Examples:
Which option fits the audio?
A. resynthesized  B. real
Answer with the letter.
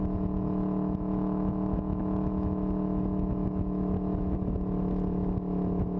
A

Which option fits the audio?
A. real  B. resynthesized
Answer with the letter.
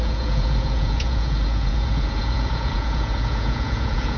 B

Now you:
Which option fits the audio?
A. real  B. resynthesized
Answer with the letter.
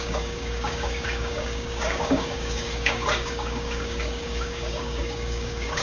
B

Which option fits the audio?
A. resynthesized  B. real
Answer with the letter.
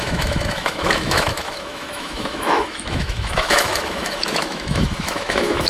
A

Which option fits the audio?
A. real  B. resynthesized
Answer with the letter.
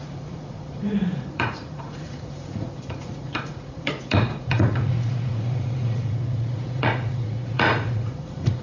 B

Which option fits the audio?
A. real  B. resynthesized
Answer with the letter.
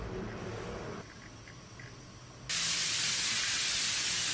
A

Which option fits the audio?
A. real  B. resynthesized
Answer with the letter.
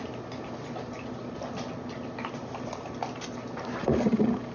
A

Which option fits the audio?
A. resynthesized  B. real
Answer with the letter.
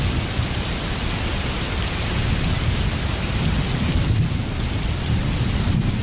B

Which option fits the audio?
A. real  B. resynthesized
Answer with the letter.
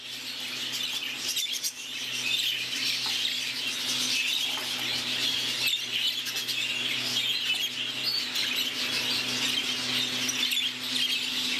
A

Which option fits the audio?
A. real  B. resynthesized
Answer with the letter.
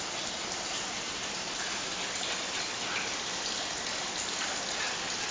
A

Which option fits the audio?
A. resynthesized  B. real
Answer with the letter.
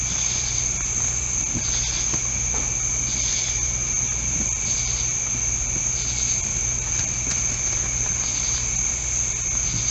B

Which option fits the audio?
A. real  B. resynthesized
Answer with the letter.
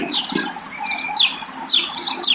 A